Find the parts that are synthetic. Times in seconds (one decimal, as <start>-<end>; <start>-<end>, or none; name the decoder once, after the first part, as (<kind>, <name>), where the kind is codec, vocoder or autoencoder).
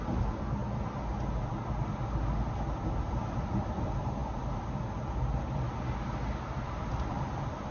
none